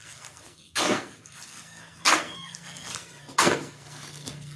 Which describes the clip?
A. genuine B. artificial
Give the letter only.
B